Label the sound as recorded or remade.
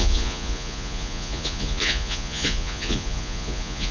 remade